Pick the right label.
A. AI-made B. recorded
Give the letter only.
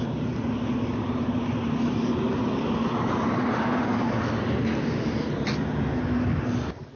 B